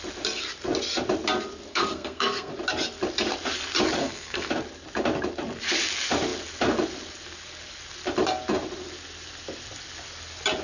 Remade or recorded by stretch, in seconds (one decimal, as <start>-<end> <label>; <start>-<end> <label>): 0.0-1.7 recorded; 1.7-2.5 remade; 2.5-4.0 recorded; 4.0-4.5 remade; 4.5-10.6 recorded

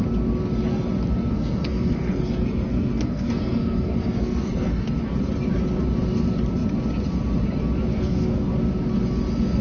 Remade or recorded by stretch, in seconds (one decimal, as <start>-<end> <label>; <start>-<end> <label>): 0.0-1.3 recorded; 1.3-4.9 remade; 4.9-7.9 recorded; 7.9-8.5 remade; 8.5-9.6 recorded

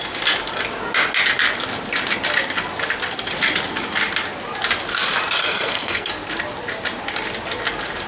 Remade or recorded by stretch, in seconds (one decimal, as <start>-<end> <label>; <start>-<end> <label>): 0.0-5.4 recorded; 5.4-6.1 remade; 6.1-8.1 recorded

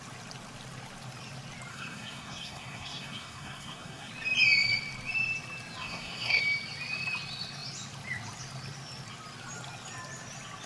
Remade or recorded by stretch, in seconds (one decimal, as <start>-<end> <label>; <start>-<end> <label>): 0.0-1.7 recorded; 1.7-4.1 remade; 4.1-5.8 recorded; 5.8-6.4 remade; 6.4-10.7 recorded

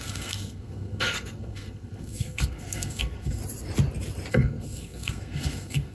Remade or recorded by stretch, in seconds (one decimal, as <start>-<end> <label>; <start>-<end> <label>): 0.0-3.4 remade; 3.4-4.3 recorded; 4.3-5.9 remade

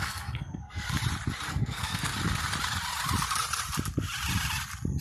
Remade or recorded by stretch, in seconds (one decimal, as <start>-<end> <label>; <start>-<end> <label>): 0.0-1.0 remade; 1.0-1.5 recorded; 1.5-2.1 remade; 2.1-5.0 recorded

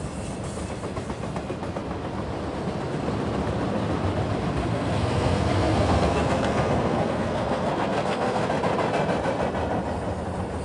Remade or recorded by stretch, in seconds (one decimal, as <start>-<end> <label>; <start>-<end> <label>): 0.0-4.6 recorded; 4.6-8.5 remade; 8.5-10.6 recorded